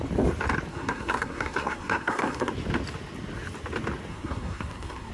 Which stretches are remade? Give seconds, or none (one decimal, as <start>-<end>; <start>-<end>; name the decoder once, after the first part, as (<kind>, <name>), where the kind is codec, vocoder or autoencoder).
0.7-2.5 (codec, SNAC); 4.1-5.1